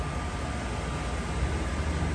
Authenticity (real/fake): real